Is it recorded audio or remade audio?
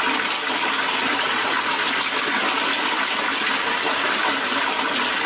recorded